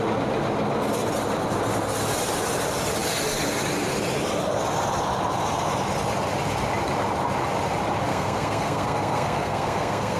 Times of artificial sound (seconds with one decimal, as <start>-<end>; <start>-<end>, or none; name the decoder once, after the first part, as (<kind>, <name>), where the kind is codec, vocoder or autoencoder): 8.1-10.2 (codec, SNAC)